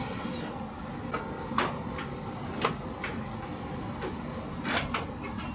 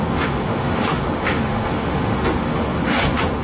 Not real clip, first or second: second